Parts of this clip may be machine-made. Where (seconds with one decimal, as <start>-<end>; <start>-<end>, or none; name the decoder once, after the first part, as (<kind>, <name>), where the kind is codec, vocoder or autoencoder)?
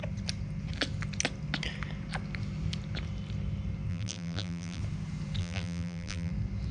3.9-4.8 (vocoder, BigVGAN v2); 5.4-6.3